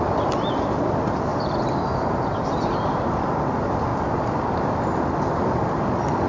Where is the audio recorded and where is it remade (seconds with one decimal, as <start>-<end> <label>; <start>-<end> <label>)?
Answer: 0.0-1.3 recorded; 1.3-2.6 remade; 2.6-3.9 recorded; 3.9-5.0 remade; 5.0-6.3 recorded